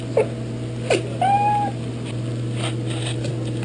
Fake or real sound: real